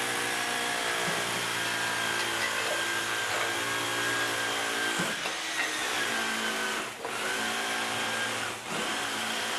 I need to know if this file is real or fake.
real